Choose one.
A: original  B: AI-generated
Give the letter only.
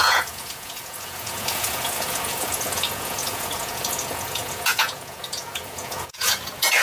B